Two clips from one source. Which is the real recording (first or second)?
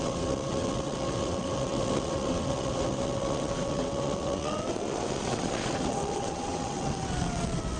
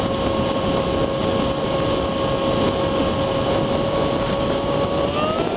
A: second